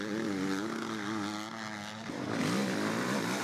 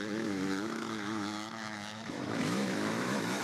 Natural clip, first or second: first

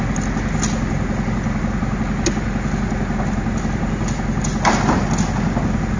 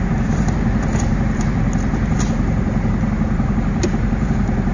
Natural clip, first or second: first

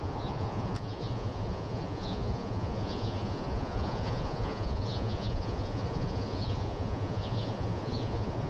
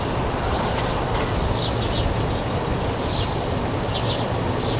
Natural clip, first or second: second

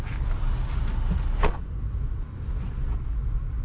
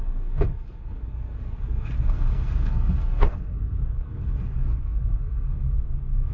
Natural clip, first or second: first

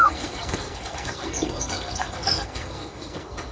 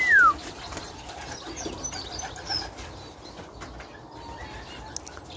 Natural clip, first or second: second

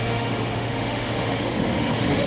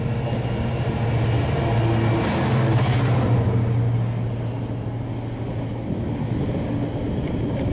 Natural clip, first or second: second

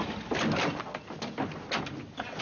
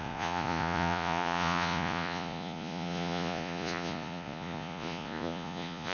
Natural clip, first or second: first